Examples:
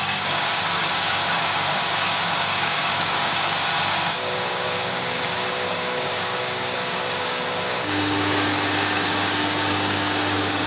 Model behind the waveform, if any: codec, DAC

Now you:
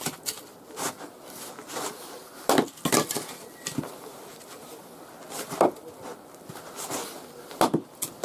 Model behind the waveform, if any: none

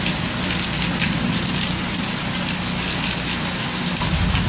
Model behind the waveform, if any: none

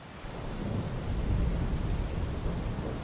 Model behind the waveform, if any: none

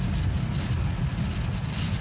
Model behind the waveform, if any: none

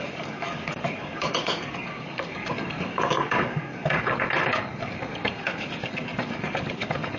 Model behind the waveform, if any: codec, DAC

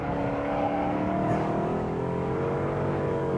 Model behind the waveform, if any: codec, DAC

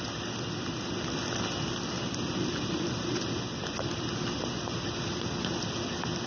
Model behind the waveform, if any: none